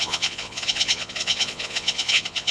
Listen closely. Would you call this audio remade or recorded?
remade